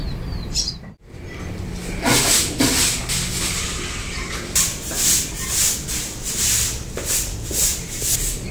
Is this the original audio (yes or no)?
yes